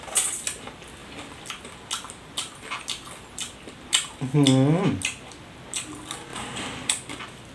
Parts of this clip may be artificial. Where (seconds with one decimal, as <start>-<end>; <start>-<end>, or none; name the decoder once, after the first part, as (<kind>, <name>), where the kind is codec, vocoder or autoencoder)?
none